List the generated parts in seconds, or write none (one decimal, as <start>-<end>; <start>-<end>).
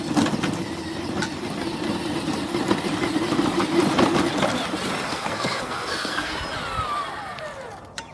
5.1-6.3